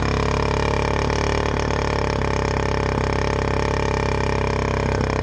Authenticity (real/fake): real